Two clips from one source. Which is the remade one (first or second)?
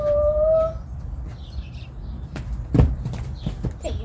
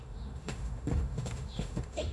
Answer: second